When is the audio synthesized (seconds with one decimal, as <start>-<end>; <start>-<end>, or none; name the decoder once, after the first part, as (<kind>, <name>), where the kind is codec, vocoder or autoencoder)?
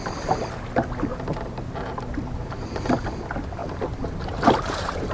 1.1-2.8 (vocoder, BigVGAN v2); 3.6-5.1